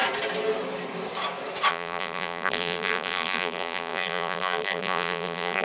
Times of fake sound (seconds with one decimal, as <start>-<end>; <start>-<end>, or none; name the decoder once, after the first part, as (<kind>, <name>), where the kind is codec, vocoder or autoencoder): 1.7-5.6 (vocoder, BigVGAN v2)